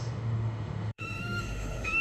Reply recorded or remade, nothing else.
remade